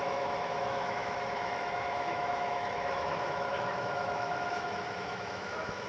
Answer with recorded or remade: remade